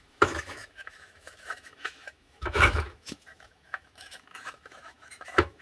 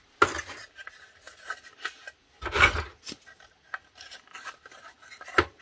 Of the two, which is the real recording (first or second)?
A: second